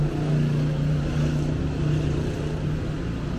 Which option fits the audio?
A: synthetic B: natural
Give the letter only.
B